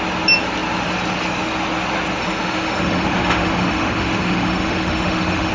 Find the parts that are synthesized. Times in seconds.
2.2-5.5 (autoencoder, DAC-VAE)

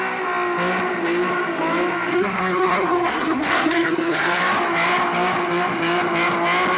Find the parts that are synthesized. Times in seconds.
2.1-4.4 (codec, SNAC)